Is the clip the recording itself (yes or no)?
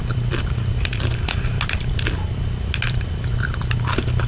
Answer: no